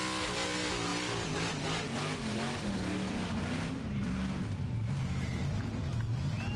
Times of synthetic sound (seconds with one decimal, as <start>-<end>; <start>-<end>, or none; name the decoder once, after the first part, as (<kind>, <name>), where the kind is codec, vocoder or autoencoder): none